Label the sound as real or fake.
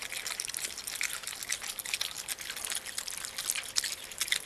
real